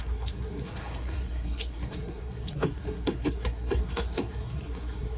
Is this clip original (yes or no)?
no